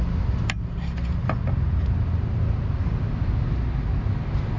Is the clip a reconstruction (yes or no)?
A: no